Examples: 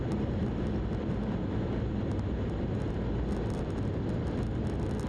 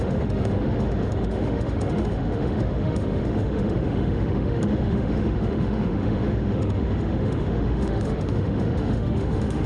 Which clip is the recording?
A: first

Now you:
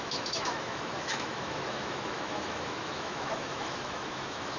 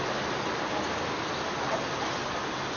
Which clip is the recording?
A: second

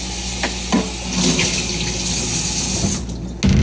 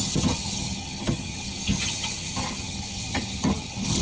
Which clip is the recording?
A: first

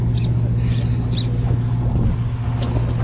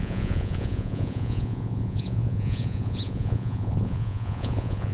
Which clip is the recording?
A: first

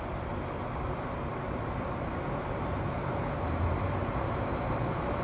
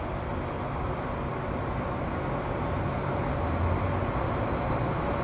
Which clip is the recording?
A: second